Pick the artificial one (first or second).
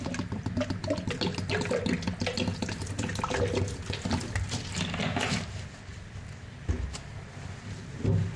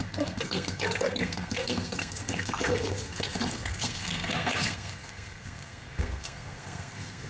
second